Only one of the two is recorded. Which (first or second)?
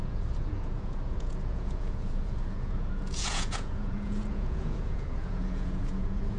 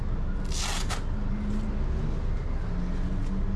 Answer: second